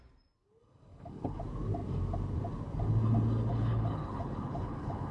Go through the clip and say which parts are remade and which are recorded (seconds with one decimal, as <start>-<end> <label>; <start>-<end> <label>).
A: 0.0-0.6 recorded; 0.6-1.4 remade; 1.4-3.5 recorded; 3.5-5.1 remade